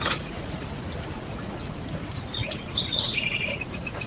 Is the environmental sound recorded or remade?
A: remade